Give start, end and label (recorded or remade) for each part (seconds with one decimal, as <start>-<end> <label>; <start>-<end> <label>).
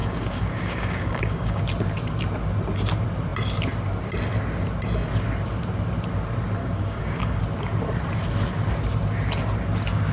0.0-1.6 remade; 1.6-6.6 recorded; 6.6-7.4 remade; 7.4-10.1 recorded